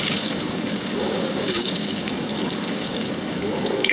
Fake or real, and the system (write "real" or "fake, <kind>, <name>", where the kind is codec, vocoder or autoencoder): fake, codec, DAC